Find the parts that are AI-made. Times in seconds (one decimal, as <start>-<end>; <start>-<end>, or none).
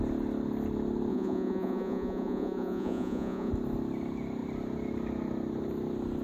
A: 1.1-3.5